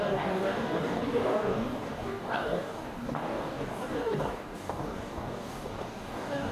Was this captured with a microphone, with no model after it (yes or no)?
no